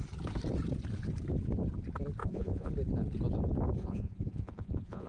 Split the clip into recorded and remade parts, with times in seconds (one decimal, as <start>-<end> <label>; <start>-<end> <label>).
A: 0.0-2.2 recorded; 2.2-2.7 remade; 2.7-3.8 recorded; 3.8-5.1 remade